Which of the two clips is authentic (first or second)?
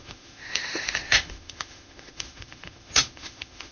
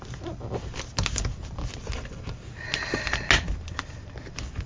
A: second